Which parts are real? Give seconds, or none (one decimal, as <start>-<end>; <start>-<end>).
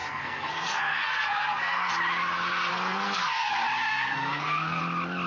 1.9-2.7; 3.5-3.9; 4.8-5.3